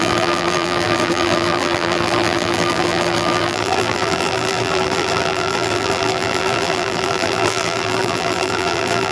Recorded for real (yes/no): no